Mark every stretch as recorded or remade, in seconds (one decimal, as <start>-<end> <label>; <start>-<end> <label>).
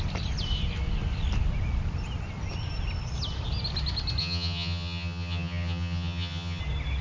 0.0-4.2 recorded; 4.2-6.6 remade; 6.6-7.0 recorded